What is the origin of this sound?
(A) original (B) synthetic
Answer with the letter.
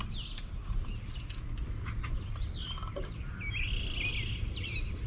A